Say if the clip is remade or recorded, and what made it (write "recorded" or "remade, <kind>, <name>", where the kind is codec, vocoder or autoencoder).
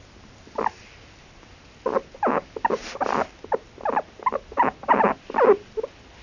recorded